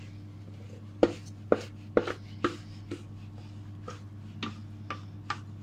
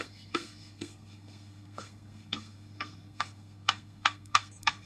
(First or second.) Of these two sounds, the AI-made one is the second